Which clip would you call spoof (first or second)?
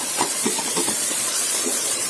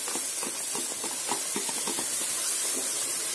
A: first